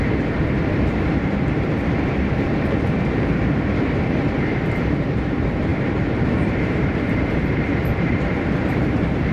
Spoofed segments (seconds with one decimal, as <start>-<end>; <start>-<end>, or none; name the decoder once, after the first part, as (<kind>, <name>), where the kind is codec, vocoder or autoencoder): 0.0-9.3 (vocoder, BigVGAN v2)